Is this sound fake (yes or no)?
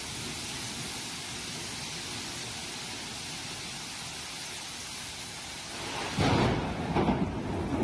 no